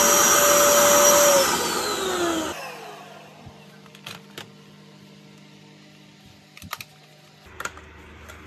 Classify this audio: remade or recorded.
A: recorded